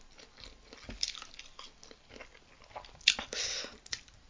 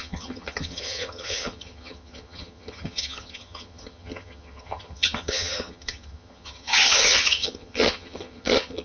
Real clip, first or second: first